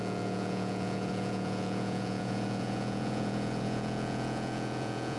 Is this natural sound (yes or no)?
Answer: no